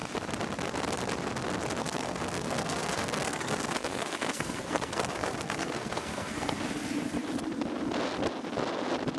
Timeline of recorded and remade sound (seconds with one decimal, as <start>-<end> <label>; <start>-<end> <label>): 0.0-1.8 recorded; 1.8-6.6 remade; 6.6-9.2 recorded